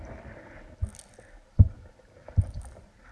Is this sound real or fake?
real